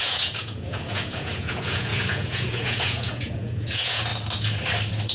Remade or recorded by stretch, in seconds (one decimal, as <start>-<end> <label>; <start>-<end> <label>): 0.0-4.1 remade; 4.1-5.1 recorded

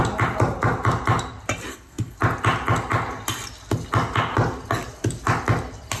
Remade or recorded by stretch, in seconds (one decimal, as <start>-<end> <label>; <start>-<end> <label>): 0.0-1.7 recorded; 1.7-2.2 remade; 2.2-6.0 recorded

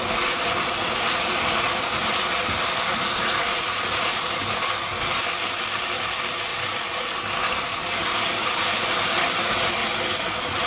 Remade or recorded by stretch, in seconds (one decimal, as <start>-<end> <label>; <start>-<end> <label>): 0.0-10.7 recorded

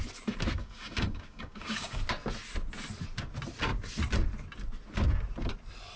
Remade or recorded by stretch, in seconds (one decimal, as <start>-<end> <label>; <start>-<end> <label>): 0.0-0.6 recorded; 0.6-2.0 remade; 2.0-6.0 recorded

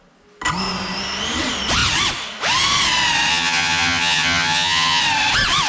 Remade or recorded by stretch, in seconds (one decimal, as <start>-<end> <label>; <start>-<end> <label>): 0.0-3.3 recorded; 3.3-5.0 remade; 5.0-5.7 recorded

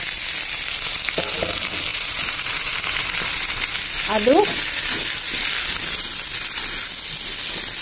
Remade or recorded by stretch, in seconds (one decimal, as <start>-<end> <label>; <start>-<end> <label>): 0.0-1.9 recorded; 1.9-3.5 remade; 3.5-7.8 recorded

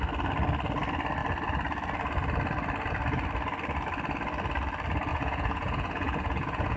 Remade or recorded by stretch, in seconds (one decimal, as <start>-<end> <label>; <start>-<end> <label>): 0.0-5.1 recorded; 5.1-6.8 remade